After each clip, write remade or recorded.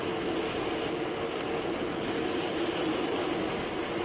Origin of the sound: recorded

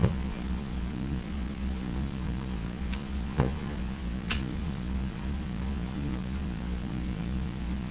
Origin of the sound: remade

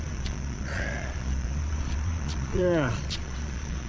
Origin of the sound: remade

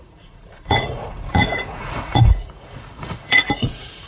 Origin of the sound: remade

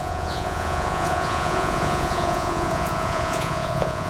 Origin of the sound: remade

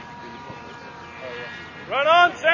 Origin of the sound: recorded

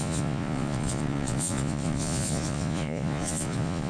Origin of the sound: remade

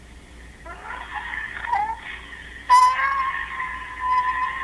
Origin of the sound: recorded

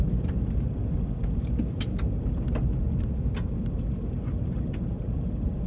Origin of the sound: recorded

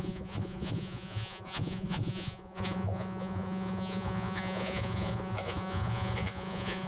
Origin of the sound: remade